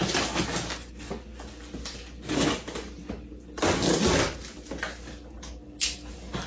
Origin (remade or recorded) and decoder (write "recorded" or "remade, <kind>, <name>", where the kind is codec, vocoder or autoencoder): recorded